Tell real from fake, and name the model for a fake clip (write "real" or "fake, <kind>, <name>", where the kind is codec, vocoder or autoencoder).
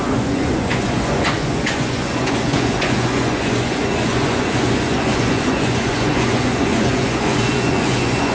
fake, vocoder, Vocos